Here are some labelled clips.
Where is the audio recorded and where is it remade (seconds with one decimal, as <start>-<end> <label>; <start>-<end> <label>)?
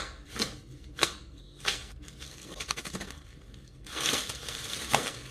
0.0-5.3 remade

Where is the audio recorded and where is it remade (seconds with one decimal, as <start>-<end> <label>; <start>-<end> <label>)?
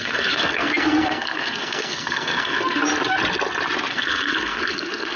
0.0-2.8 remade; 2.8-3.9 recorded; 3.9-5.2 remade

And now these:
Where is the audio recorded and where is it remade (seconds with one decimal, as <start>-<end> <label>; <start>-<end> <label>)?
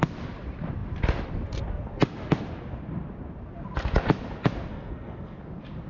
0.0-4.7 recorded; 4.7-5.4 remade; 5.4-5.9 recorded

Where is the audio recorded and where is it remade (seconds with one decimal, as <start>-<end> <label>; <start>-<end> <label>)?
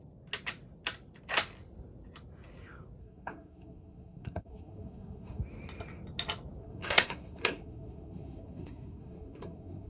0.0-3.0 recorded; 3.0-5.4 remade; 5.4-6.6 recorded; 6.6-9.9 remade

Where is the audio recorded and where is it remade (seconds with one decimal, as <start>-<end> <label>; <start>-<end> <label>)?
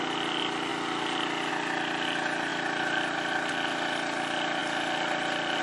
0.0-5.6 recorded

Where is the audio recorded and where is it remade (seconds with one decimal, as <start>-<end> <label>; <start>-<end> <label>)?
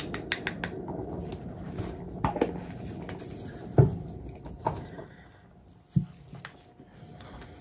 0.0-7.6 recorded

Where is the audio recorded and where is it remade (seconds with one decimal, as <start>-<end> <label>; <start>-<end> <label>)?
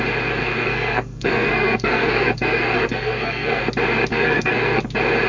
0.0-0.4 recorded; 0.4-3.6 remade; 3.6-4.1 recorded; 4.1-4.8 remade; 4.8-5.3 recorded